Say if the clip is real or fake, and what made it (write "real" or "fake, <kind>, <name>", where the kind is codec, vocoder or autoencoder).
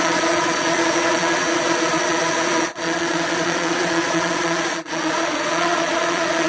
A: fake, vocoder, Vocos